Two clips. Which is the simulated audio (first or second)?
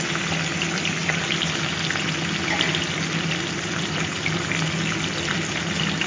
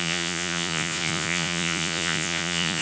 second